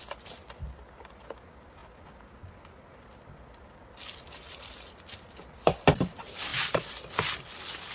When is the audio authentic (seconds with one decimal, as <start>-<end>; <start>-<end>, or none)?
0.0-7.9